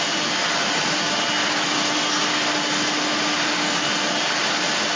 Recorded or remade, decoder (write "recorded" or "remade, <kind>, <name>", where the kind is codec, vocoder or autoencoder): recorded